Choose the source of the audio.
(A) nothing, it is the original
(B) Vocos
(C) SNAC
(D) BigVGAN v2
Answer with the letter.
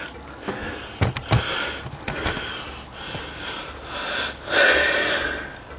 A